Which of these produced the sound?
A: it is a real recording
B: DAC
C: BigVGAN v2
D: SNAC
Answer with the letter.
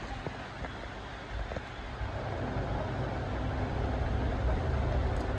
A